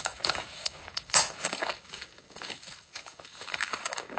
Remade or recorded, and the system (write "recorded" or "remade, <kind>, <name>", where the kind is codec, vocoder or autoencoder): remade, codec, DAC